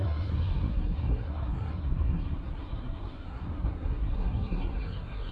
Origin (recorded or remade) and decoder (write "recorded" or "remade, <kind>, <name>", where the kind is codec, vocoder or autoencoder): remade, codec, SNAC